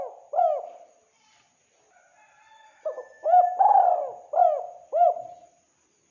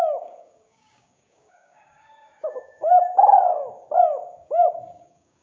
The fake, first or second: second